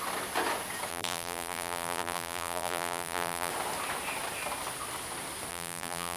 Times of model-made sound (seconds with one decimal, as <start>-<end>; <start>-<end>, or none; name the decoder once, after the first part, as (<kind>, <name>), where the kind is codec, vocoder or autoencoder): 0.9-3.5 (vocoder, BigVGAN v2); 5.5-6.2